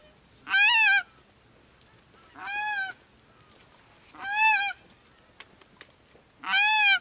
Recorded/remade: recorded